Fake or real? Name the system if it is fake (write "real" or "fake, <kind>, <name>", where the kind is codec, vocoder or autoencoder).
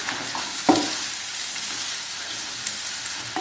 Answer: real